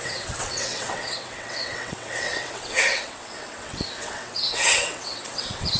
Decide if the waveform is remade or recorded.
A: remade